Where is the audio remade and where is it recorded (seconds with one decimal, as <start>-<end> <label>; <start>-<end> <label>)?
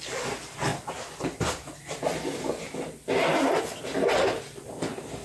0.0-5.2 recorded